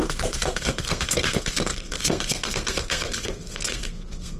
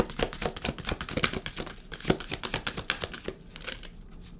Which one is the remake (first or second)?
first